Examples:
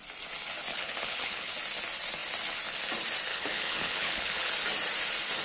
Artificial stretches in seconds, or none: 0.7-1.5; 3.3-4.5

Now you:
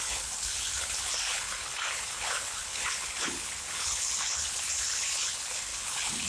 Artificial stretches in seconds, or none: 0.0-6.3

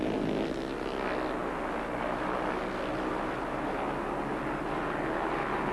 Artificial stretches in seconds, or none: none

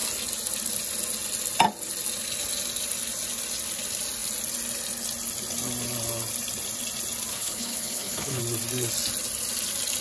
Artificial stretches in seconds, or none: 7.3-8.4

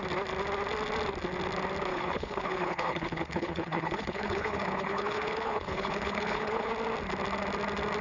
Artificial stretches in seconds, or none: 1.9-6.7

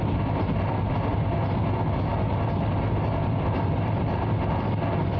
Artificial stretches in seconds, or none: none